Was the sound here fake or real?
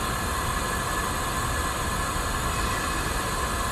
real